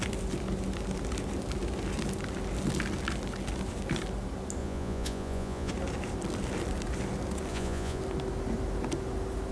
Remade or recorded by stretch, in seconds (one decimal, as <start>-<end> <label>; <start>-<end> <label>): 0.0-4.6 recorded; 4.6-5.7 remade; 5.7-7.5 recorded; 7.5-8.0 remade; 8.0-9.5 recorded